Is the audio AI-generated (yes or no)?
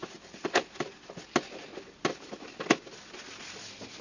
no